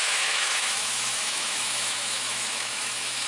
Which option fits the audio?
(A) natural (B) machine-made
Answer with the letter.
B